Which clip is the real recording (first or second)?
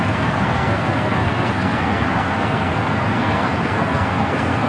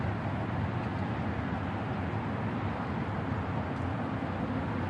second